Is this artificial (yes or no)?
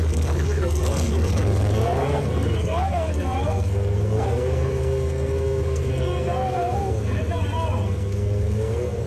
yes